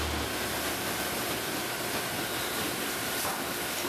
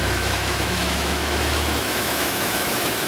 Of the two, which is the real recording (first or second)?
first